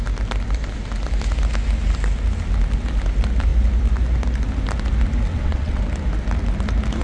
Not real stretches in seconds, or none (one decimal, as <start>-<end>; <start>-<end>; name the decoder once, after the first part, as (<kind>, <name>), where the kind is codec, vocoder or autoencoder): 5.3-5.8 (vocoder, WaveNeXt)